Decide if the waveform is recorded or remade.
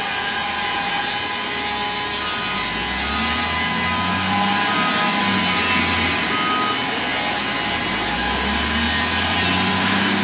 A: recorded